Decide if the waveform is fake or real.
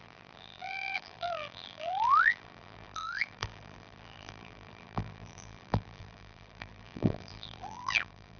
fake